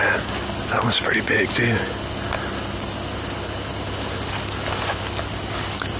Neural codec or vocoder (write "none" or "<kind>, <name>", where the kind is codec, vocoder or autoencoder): none